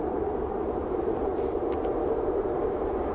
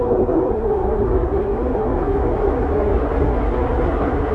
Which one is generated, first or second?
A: second